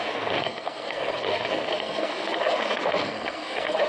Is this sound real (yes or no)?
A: no